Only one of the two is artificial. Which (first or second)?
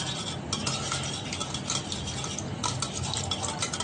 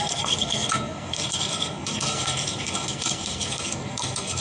second